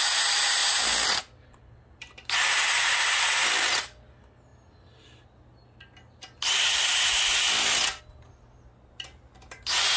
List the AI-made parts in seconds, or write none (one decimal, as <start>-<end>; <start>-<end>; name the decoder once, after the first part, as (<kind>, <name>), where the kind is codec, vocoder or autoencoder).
none